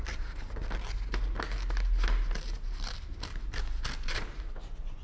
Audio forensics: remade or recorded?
recorded